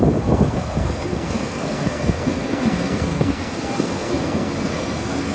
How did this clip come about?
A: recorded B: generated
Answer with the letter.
B